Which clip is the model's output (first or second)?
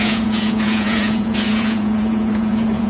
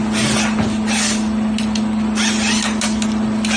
first